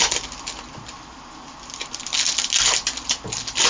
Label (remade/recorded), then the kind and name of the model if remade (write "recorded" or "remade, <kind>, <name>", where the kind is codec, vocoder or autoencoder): recorded